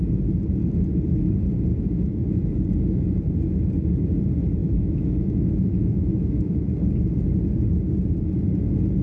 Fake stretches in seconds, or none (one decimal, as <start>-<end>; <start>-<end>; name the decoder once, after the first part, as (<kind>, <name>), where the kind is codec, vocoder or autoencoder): 1.7-2.6 (autoencoder, DAC-VAE); 4.6-6.7